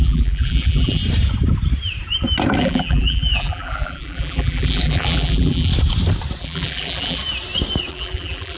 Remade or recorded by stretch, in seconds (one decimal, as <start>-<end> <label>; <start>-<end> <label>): 0.0-1.0 remade; 1.0-2.6 recorded; 2.6-5.7 remade; 5.7-6.4 recorded; 6.4-7.2 remade; 7.2-7.9 recorded; 7.9-8.6 remade